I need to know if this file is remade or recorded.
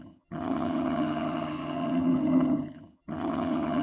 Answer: remade